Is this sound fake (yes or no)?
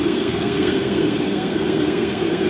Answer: yes